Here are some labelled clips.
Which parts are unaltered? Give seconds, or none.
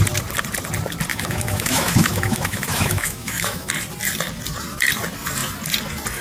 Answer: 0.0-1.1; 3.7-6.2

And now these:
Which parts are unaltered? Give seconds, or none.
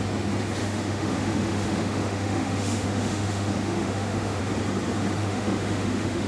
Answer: 0.0-0.6; 4.4-5.2